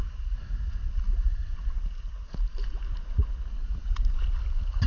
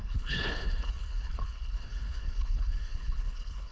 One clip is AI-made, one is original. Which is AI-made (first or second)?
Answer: second